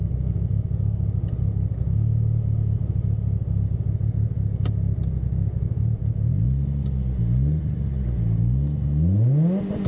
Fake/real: real